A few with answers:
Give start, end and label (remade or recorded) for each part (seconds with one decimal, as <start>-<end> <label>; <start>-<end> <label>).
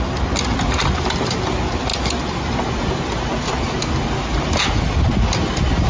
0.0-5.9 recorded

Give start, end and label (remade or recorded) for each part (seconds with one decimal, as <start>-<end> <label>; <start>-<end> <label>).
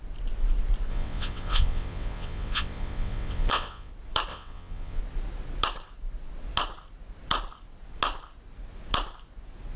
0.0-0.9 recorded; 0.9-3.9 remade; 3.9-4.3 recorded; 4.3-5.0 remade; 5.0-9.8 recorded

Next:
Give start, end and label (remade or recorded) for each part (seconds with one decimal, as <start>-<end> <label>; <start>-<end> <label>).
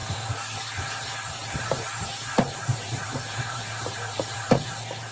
0.0-5.1 remade